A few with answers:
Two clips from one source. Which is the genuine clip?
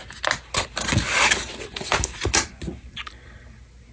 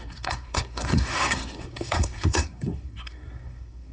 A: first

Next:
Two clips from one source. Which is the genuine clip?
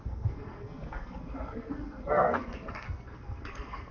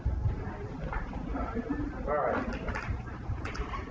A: second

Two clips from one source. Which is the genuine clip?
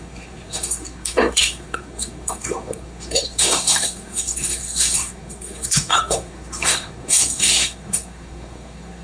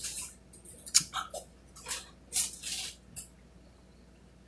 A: second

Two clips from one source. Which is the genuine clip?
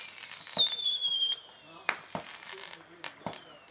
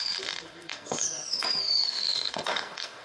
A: first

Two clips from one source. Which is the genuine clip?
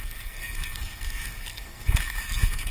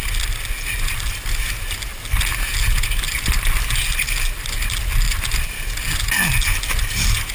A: second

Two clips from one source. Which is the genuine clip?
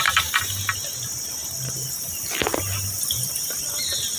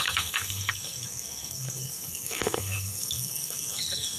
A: first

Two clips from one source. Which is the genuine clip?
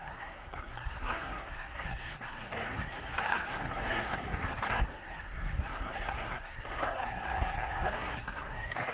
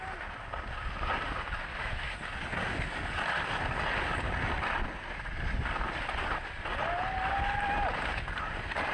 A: second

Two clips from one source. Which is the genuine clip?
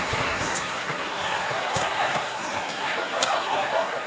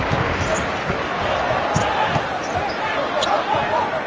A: second